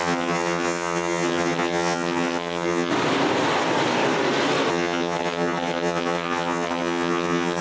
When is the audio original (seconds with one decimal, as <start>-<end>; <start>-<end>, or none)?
2.9-4.7